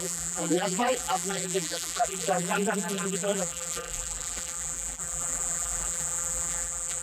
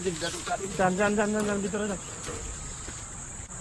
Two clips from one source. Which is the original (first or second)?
second